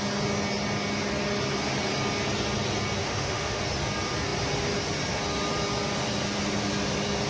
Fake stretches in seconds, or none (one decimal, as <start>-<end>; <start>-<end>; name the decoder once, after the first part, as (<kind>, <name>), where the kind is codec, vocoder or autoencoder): 3.0-3.6 (autoencoder, DAC-VAE)